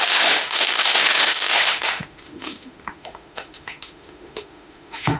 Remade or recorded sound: remade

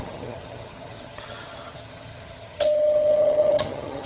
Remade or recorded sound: remade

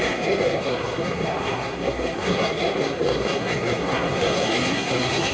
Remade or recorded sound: remade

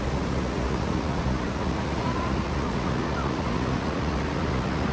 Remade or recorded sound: remade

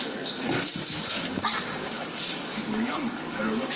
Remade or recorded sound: remade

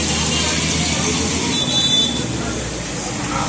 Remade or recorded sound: recorded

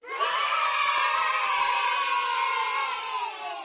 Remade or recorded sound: remade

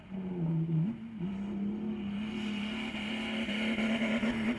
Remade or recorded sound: recorded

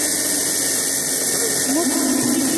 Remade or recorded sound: recorded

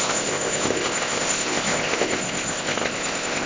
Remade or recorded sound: remade